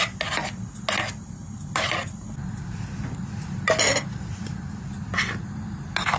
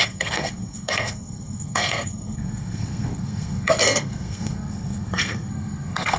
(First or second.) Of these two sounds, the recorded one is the first